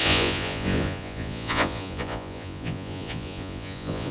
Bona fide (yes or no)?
no